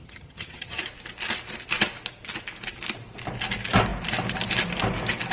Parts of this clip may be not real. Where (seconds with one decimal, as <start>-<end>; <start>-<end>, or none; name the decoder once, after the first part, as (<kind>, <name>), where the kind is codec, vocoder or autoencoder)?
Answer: 0.0-0.8 (vocoder, HiFi-GAN)